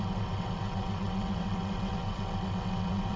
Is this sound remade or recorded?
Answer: remade